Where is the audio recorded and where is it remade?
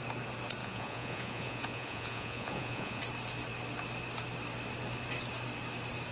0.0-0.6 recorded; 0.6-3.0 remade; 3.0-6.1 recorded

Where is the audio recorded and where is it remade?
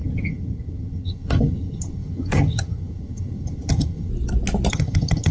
0.0-4.1 remade; 4.1-4.7 recorded; 4.7-5.3 remade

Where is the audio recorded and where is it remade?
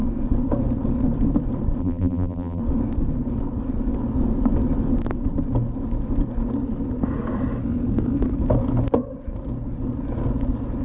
0.0-1.8 recorded; 1.8-2.6 remade; 2.6-10.8 recorded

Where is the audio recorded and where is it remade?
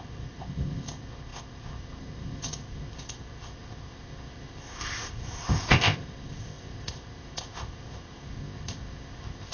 0.0-9.5 remade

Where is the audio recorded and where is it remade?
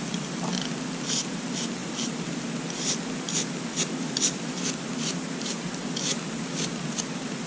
0.0-7.5 recorded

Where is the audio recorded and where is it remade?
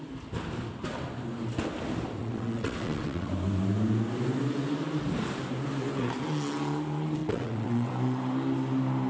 0.0-2.2 recorded; 2.2-3.3 remade; 3.3-7.2 recorded; 7.2-7.9 remade; 7.9-9.1 recorded